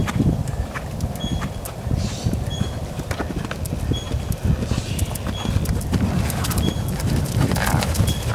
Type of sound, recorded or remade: recorded